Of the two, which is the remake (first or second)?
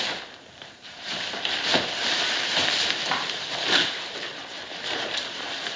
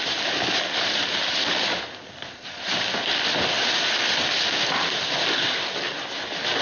first